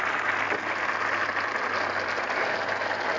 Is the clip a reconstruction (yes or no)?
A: no